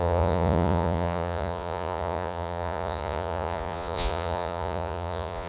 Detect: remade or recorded remade